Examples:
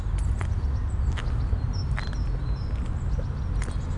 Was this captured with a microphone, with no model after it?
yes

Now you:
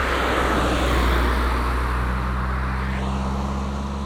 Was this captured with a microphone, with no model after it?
yes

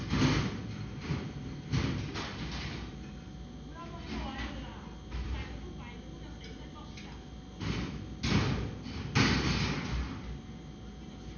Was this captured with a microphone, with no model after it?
yes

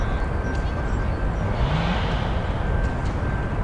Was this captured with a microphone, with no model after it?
yes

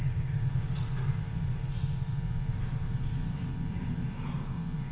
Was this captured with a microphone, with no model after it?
yes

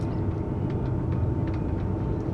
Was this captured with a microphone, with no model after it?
yes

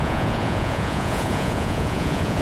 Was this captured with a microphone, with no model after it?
no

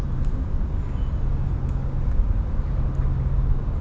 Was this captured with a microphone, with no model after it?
yes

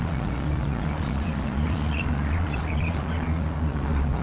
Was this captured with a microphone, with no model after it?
no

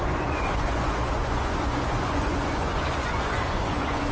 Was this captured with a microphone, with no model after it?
no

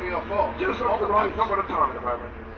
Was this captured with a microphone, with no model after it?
yes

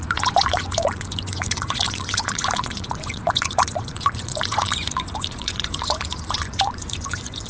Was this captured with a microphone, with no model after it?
no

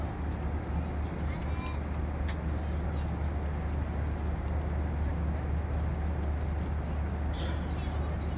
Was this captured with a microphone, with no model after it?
yes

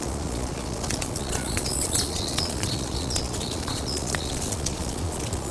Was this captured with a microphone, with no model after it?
no